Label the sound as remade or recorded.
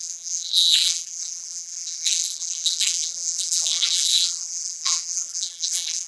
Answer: remade